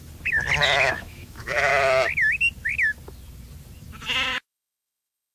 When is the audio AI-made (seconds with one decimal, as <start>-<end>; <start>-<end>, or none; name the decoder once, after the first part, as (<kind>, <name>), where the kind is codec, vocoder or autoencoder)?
0.9-1.7 (autoencoder, DAC-VAE); 4.3-5.3